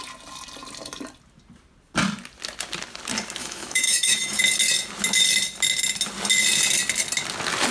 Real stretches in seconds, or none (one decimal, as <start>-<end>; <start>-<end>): 0.0-3.4; 4.4-7.7